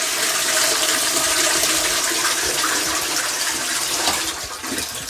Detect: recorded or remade remade